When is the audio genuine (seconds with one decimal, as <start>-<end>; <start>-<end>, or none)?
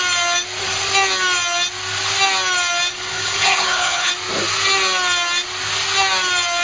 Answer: 0.0-2.9; 4.1-6.6